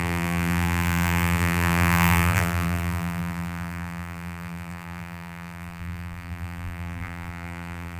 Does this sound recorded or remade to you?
remade